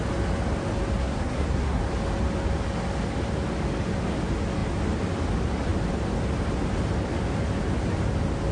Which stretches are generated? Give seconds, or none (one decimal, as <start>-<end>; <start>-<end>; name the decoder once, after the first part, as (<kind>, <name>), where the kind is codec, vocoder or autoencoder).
1.0-1.8 (codec, SNAC)